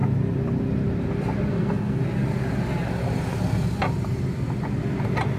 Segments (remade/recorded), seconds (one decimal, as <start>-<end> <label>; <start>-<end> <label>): 0.0-1.5 recorded; 1.5-2.0 remade; 2.0-5.4 recorded